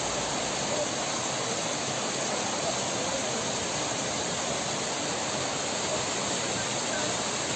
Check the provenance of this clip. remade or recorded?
recorded